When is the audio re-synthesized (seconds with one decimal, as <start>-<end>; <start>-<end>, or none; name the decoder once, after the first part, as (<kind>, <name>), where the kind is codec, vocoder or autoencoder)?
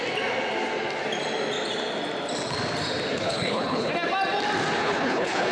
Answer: 3.1-3.9 (codec, HILCodec); 4.8-5.5